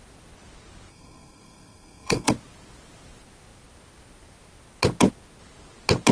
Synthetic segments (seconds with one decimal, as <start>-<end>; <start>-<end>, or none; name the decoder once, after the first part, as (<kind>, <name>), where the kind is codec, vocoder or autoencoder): 0.9-2.3 (codec, SNAC)